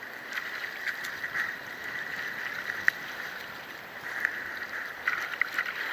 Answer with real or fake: real